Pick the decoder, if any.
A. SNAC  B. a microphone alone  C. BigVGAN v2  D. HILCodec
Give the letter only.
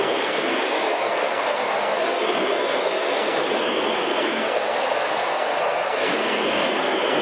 A